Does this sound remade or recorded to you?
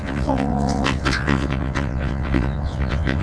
remade